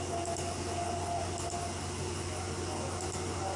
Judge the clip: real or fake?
real